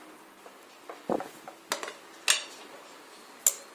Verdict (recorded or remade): recorded